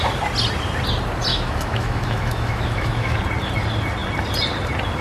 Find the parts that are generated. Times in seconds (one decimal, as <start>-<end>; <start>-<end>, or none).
1.3-3.2